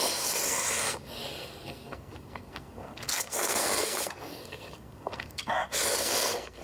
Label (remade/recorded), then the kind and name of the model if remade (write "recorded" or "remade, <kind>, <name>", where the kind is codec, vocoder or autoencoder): remade, codec, SNAC